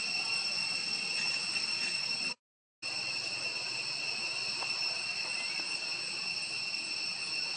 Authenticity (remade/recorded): recorded